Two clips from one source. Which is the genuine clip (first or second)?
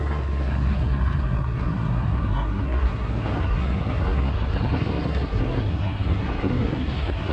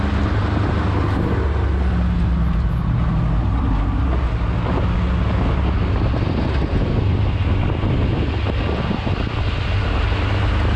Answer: second